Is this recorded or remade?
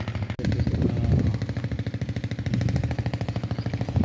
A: recorded